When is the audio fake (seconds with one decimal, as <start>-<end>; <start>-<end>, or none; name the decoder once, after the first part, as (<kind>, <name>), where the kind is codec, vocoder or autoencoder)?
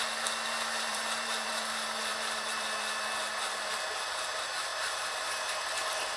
0.9-1.5 (vocoder, BigVGAN v2); 2.1-3.1; 4.7-5.3